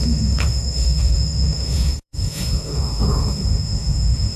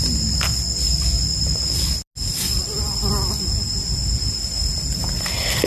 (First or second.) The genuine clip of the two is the second